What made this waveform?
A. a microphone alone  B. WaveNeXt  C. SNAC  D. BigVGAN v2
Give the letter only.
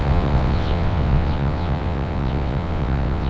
B